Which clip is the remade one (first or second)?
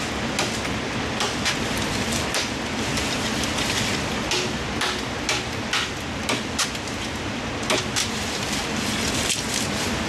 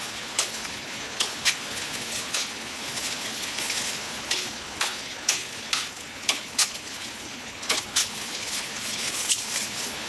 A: second